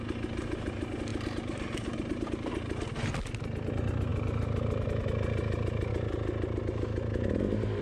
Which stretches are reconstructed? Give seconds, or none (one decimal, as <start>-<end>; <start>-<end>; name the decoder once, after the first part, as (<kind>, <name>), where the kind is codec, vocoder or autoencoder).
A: 1.1-2.5 (vocoder, BigVGAN v2)